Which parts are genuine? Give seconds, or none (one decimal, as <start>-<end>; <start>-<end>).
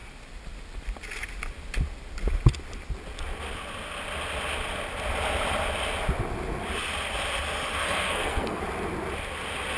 0.0-7.8; 8.6-9.8